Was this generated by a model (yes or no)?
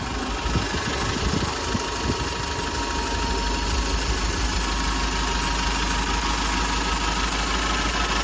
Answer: no